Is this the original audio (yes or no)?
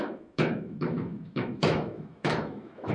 no